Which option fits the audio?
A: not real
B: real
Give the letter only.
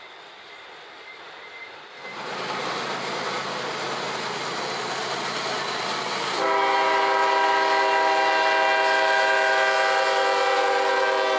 B